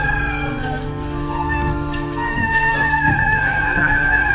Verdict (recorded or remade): remade